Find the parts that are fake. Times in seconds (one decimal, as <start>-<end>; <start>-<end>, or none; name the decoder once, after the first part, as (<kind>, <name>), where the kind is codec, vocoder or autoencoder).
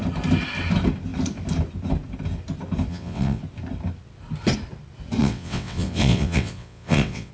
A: 2.9-3.4 (vocoder, WaveNeXt); 5.2-7.3